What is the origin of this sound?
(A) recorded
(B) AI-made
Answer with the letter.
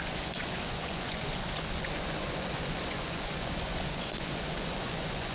B